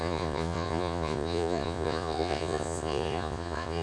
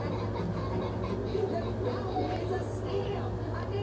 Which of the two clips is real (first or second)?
second